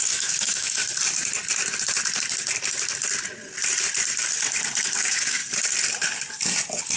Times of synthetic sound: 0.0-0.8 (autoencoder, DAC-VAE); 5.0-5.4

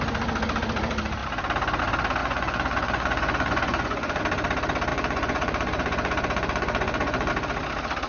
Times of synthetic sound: 2.2-4.2 (vocoder, Vocos); 4.9-7.3

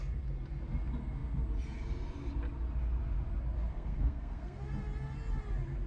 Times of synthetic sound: 3.7-4.6 (codec, SNAC)